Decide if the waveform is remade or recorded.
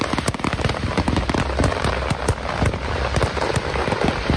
recorded